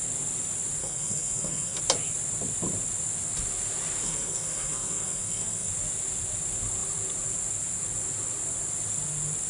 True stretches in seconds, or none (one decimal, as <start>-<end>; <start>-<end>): 0.0-0.8; 1.8-4.0; 5.7-9.5